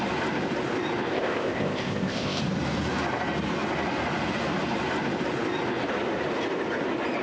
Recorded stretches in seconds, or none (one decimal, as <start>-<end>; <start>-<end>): 0.0-1.1; 2.4-7.2